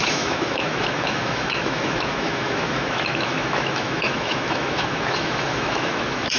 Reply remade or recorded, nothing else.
remade